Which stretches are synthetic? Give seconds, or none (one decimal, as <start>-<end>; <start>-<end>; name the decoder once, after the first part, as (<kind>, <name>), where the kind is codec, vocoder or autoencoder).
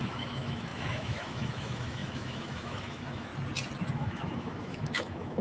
0.0-3.3 (autoencoder, DAC-VAE); 3.9-5.4